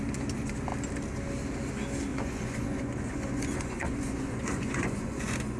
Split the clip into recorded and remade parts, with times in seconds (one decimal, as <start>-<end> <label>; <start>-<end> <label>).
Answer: 0.0-2.1 recorded; 2.1-5.6 remade